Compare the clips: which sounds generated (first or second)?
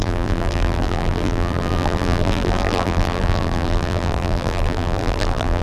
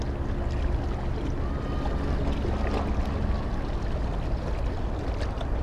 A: first